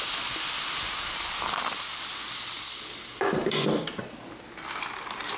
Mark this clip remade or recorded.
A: remade